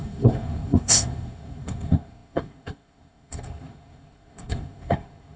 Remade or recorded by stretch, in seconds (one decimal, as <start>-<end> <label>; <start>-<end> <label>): 0.0-5.4 remade